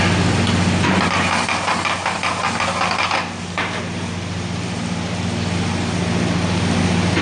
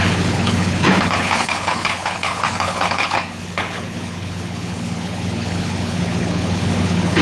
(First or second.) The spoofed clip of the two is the second